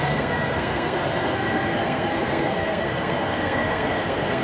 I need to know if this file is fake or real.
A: fake